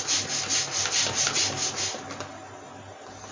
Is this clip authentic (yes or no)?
yes